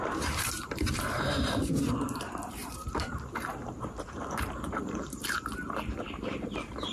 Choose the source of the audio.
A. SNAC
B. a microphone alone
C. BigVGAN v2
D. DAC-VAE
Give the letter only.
C